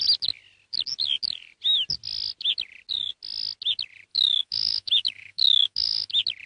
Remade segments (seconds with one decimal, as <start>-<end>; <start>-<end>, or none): 4.1-6.1